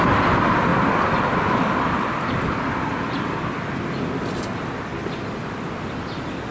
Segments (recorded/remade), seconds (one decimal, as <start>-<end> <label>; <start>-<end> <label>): 0.0-6.5 recorded